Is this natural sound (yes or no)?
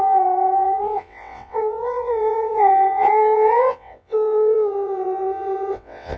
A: no